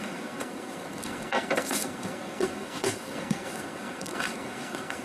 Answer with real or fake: fake